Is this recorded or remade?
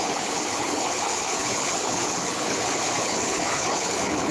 remade